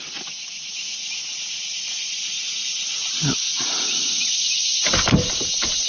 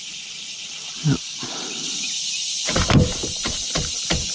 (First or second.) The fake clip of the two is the second